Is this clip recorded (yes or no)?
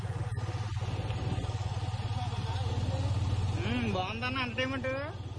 yes